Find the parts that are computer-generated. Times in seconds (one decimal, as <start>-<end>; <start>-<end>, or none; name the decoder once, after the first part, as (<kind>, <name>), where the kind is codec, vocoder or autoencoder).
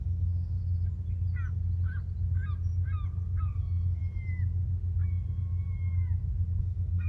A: 0.0-0.6 (codec, SNAC); 3.4-4.0; 6.6-7.1